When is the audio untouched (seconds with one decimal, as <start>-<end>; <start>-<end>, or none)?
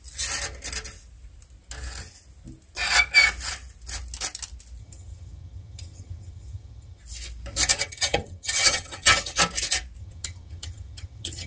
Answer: 0.0-4.8; 7.0-7.7; 9.4-10.0